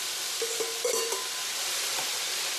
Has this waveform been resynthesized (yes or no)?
no